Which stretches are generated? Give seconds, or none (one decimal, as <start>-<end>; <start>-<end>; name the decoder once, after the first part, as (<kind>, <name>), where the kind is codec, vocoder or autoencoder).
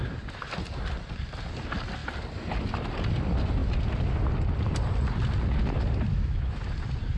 6.1-6.6 (autoencoder, DAC-VAE)